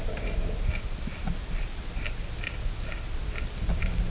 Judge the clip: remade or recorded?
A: recorded